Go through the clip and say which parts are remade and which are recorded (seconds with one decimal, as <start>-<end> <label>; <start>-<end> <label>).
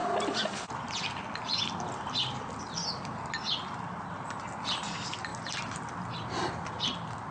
0.0-7.3 recorded